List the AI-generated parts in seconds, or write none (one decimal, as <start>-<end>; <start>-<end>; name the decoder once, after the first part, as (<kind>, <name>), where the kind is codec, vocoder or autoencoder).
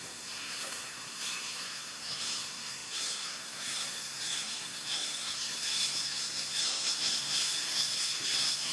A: 0.0-8.7 (codec, SNAC)